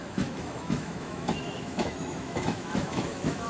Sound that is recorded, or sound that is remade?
remade